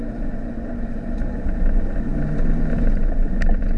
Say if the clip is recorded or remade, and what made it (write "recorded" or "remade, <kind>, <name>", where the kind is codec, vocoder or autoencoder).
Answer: remade, vocoder, BigVGAN v2